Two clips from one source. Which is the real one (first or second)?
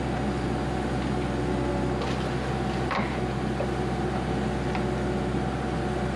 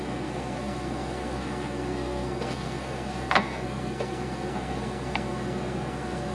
first